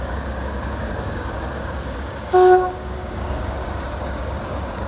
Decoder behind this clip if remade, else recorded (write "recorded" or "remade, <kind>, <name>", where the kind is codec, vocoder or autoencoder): remade, codec, DAC